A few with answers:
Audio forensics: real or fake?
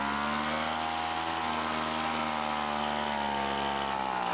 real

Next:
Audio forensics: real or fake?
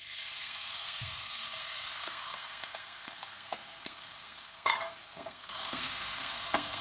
fake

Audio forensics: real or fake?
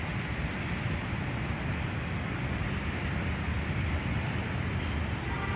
real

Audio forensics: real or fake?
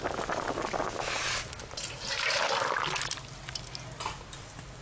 real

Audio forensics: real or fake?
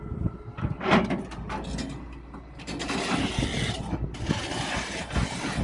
real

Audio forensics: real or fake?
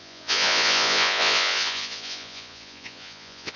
fake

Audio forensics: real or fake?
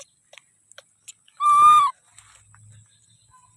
real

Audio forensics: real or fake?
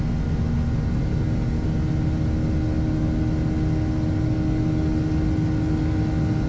real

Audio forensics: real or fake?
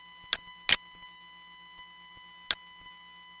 real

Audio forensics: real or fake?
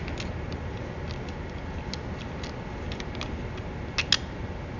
real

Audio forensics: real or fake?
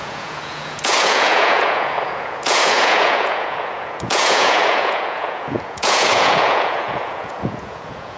fake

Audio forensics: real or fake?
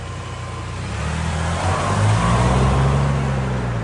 real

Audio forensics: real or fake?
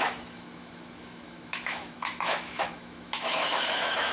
fake